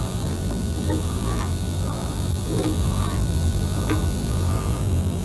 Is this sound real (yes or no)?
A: no